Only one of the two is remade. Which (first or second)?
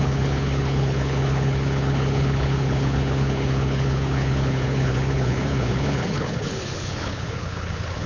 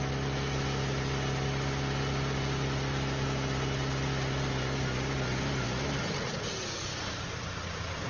first